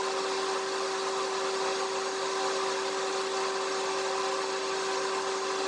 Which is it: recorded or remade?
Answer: recorded